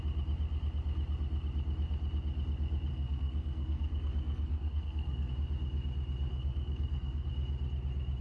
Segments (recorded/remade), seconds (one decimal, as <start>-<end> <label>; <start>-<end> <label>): 0.0-2.9 recorded; 2.9-5.3 remade; 5.3-6.3 recorded; 6.3-7.3 remade; 7.3-8.2 recorded

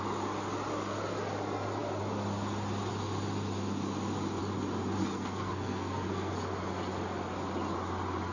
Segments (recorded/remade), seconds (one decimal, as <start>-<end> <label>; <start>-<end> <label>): 0.0-5.0 recorded; 5.0-6.3 remade; 6.3-8.3 recorded

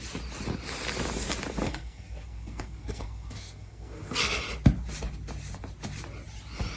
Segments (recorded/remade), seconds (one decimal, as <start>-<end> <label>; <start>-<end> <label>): 0.0-1.6 recorded; 1.6-4.4 remade; 4.4-6.8 recorded

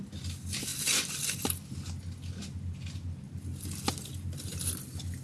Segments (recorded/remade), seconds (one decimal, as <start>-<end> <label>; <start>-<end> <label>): 0.0-5.2 recorded

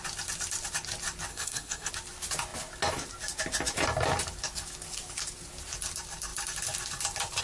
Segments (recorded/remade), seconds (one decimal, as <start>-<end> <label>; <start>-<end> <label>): 0.0-1.3 recorded; 1.3-1.9 remade; 1.9-7.4 recorded